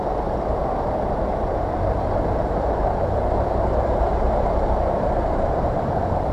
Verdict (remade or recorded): remade